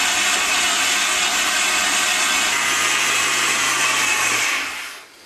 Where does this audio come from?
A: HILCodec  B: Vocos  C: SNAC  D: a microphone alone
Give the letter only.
D